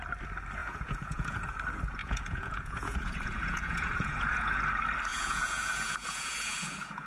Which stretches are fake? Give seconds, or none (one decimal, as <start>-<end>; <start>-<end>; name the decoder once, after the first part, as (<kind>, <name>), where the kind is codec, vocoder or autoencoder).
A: 0.6-1.5 (vocoder, Vocos); 2.0-4.6; 5.1-7.1